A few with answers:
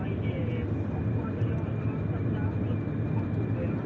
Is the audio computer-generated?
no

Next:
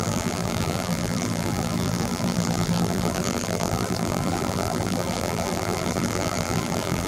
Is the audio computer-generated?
yes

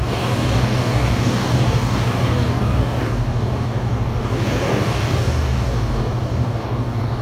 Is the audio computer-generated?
yes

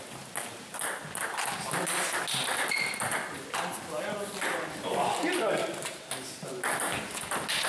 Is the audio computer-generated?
no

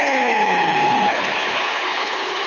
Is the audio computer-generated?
yes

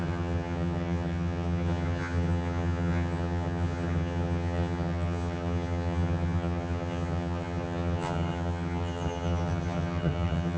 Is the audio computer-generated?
yes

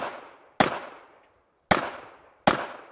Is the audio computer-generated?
no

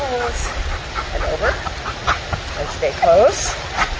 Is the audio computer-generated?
no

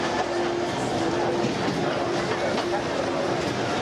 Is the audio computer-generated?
no